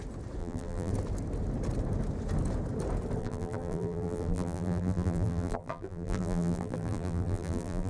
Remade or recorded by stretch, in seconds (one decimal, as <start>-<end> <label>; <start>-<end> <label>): 0.0-0.4 recorded; 0.4-0.9 remade; 0.9-3.2 recorded; 3.2-7.9 remade